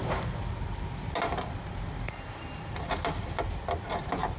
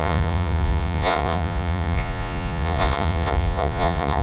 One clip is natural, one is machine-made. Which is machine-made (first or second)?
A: second